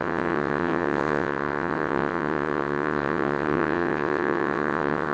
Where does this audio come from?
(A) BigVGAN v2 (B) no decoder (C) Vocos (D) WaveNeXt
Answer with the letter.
D